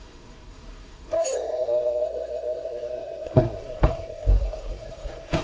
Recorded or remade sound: remade